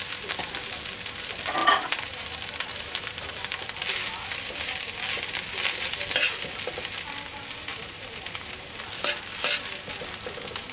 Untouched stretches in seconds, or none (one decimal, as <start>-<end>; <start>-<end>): 0.0-1.6; 3.4-7.7; 8.8-10.7